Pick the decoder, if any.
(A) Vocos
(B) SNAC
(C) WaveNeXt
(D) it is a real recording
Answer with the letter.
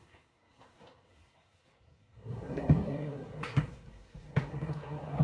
B